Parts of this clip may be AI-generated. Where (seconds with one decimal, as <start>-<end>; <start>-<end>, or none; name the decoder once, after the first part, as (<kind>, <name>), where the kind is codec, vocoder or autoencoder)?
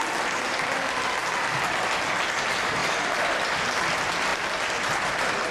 2.8-3.4 (vocoder, BigVGAN v2)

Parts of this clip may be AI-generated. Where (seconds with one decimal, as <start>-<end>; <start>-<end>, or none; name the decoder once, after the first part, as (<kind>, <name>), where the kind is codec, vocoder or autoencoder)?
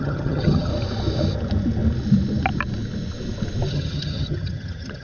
0.0-0.7 (vocoder, HiFi-GAN); 3.7-5.0